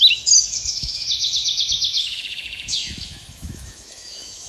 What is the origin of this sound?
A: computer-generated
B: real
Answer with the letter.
A